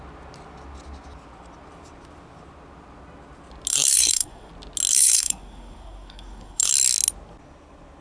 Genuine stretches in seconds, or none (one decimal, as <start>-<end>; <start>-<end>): 0.0-3.7; 4.5-4.9; 6.7-8.0